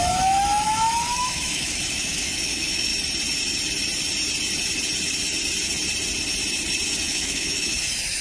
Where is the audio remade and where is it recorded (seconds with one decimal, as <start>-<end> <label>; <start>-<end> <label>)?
0.0-2.9 remade; 2.9-7.0 recorded; 7.0-8.2 remade